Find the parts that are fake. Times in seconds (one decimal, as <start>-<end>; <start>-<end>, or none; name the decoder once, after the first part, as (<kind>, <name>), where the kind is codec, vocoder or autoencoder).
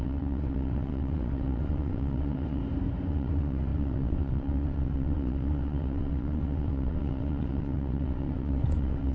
0.0-2.6 (vocoder, WaveNeXt); 3.1-9.1